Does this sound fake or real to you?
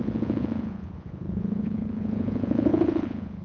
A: fake